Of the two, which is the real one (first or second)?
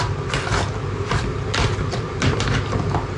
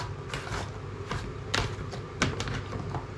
second